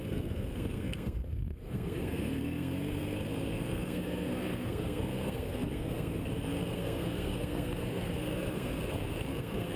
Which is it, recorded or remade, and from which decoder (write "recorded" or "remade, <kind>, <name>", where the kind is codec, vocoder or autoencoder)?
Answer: remade, codec, SNAC